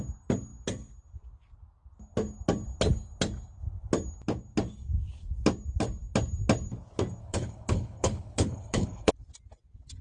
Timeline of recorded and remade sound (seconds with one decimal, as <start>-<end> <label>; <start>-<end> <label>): 0.0-7.2 recorded; 7.2-9.1 remade; 9.1-10.0 recorded